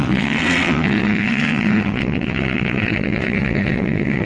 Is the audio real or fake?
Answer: fake